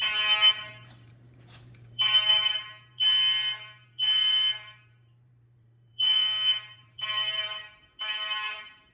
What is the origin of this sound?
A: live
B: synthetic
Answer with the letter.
B